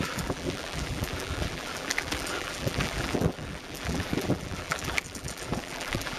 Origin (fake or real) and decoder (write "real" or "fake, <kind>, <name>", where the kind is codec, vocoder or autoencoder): fake, vocoder, BigVGAN v2